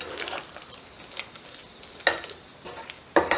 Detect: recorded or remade recorded